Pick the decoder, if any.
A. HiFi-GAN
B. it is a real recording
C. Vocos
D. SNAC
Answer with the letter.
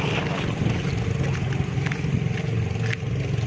B